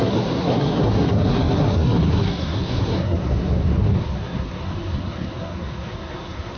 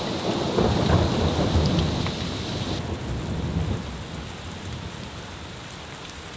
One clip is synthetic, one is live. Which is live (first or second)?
second